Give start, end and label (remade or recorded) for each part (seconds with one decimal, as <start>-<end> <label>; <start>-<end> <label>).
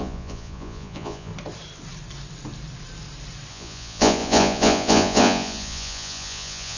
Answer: 0.0-1.3 remade; 1.3-3.5 recorded; 3.5-6.8 remade